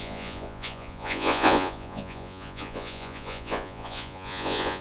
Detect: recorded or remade remade